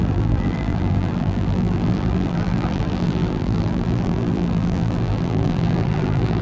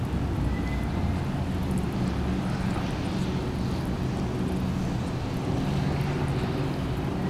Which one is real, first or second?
second